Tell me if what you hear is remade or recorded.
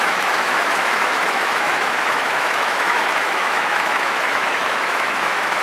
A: remade